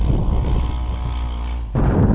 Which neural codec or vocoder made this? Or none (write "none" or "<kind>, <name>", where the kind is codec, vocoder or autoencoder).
none